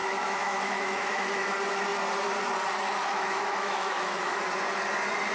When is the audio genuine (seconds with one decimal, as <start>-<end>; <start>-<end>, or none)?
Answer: 1.5-3.0; 4.4-5.3